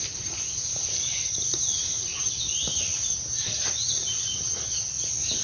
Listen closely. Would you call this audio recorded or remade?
recorded